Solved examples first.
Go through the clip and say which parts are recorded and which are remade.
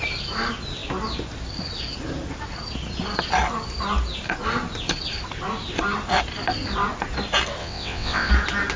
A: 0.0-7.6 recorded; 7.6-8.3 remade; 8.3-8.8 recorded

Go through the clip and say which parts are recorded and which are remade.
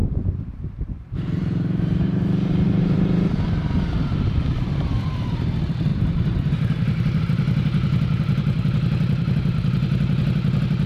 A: 0.0-5.0 remade; 5.0-5.9 recorded; 5.9-7.2 remade; 7.2-10.9 recorded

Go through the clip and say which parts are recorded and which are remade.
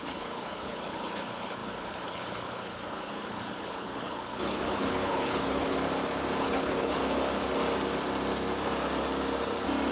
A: 0.0-5.8 remade; 5.8-6.4 recorded; 6.4-7.0 remade; 7.0-9.9 recorded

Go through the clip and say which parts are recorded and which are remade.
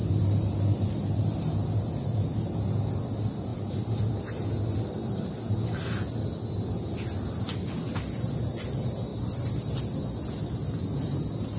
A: 0.0-1.8 remade; 1.8-3.5 recorded; 3.5-4.2 remade; 4.2-9.1 recorded; 9.1-9.8 remade; 9.8-11.6 recorded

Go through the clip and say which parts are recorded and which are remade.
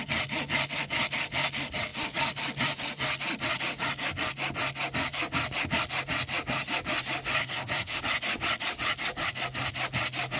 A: 0.0-7.4 recorded; 7.4-8.0 remade; 8.0-10.4 recorded